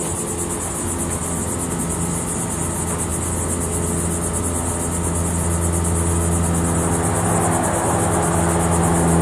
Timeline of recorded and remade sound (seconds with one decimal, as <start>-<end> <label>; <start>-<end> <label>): 0.0-9.2 recorded